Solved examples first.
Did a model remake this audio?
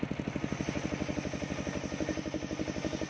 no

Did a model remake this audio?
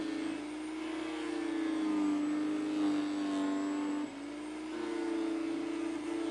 no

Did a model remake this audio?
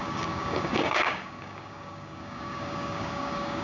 yes